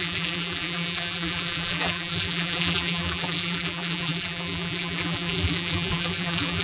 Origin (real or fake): fake